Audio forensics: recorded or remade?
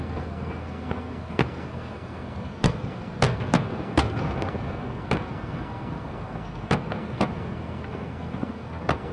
remade